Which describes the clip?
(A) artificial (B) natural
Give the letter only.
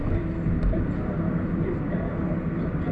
B